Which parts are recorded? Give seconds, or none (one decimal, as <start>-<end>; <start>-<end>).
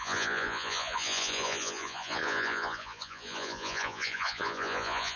none